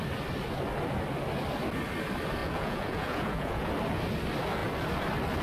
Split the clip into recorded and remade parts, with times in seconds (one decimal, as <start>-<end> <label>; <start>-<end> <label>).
0.0-2.4 recorded; 2.4-3.7 remade; 3.7-5.4 recorded